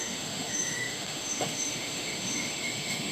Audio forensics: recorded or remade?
remade